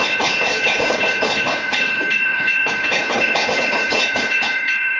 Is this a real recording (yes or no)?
no